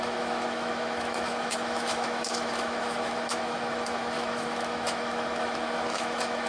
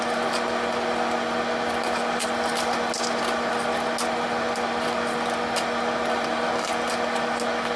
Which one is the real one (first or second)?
second